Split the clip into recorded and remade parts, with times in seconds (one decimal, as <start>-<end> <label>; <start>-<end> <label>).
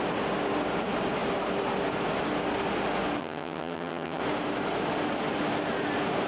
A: 0.0-3.2 recorded; 3.2-4.2 remade; 4.2-6.3 recorded